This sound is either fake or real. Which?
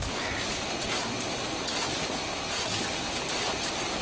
real